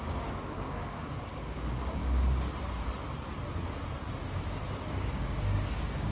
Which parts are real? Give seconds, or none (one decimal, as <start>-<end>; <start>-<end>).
2.0-4.9